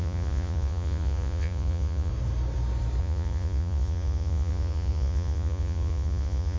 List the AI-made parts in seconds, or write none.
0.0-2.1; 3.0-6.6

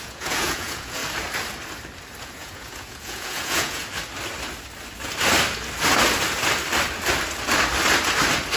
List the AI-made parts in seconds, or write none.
0.0-1.0; 2.2-3.8

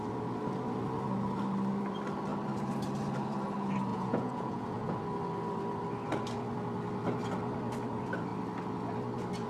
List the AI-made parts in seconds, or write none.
3.9-5.0

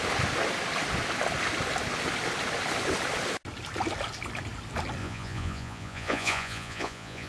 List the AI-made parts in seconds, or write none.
5.0-7.3

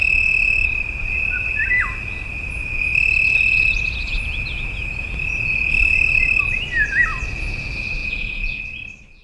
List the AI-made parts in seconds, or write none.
8.0-8.6

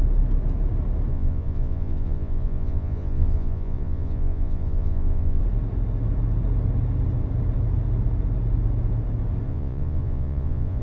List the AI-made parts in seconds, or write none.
1.1-5.4; 9.5-10.8